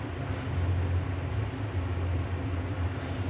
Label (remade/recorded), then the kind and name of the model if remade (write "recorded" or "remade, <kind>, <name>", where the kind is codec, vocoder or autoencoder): recorded